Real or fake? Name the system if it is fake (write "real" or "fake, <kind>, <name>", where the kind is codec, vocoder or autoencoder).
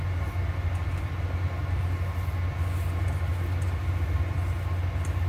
real